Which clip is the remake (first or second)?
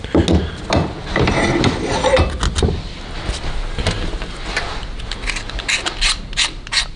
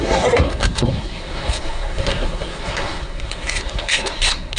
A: second